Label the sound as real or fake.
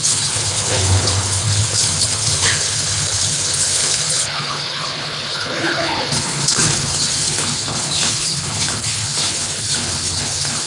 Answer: fake